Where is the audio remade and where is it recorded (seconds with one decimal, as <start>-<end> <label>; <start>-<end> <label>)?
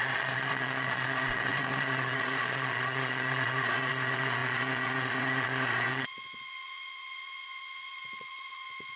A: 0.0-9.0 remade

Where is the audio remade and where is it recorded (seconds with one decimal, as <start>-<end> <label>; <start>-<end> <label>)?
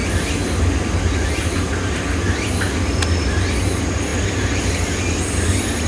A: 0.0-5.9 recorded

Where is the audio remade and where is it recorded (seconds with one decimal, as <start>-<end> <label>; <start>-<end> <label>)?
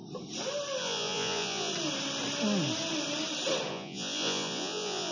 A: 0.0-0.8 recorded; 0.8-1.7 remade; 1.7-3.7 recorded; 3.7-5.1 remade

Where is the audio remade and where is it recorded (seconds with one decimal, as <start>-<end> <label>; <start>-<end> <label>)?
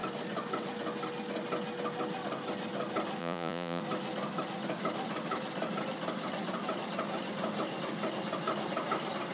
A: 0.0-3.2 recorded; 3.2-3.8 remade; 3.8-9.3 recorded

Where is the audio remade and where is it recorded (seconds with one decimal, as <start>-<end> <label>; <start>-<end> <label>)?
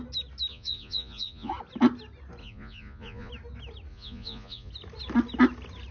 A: 0.0-0.5 recorded; 0.5-1.5 remade; 1.5-2.4 recorded; 2.4-3.3 remade; 3.3-3.9 recorded; 3.9-4.7 remade; 4.7-5.9 recorded